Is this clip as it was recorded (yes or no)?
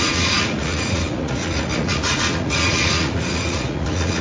no